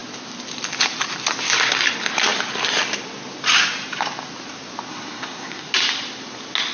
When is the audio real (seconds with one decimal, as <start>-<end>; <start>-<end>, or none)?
0.0-4.9; 5.7-6.7